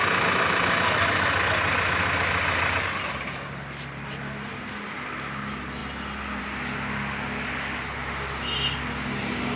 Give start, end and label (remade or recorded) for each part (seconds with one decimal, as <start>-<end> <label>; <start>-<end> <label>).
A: 0.0-9.6 recorded